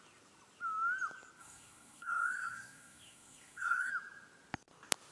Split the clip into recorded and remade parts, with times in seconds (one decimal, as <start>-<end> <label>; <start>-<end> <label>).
0.0-1.4 recorded; 1.4-3.9 remade; 3.9-5.1 recorded